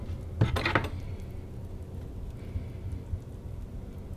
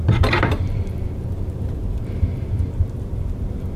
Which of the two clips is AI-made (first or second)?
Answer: second